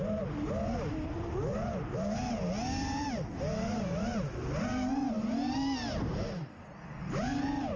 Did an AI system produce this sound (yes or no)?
no